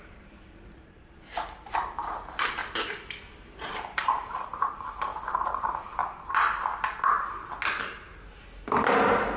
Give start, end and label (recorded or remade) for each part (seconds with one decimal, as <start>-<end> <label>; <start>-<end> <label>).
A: 0.0-2.6 remade; 2.6-3.6 recorded; 3.6-6.0 remade; 6.0-9.4 recorded